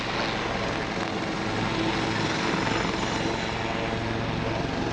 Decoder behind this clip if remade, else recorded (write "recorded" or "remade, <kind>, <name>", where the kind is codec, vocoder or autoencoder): recorded